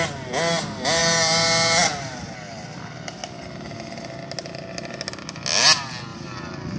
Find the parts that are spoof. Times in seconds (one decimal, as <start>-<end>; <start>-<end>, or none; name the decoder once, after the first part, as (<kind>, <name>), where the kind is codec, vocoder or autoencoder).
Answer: none